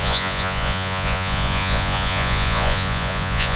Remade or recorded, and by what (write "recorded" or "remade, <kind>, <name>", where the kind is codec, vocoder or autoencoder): remade, vocoder, Vocos